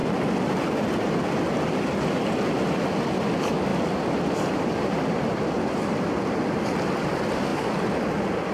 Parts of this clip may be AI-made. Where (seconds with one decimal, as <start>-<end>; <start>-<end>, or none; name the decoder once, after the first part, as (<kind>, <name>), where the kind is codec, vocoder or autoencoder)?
none